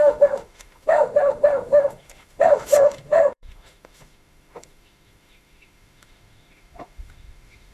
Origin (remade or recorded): remade